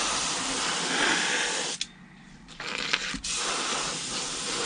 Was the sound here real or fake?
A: real